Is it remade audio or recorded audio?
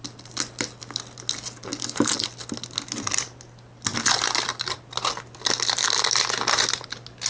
recorded